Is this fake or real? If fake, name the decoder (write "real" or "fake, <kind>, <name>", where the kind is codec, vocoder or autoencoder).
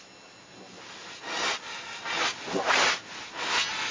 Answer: real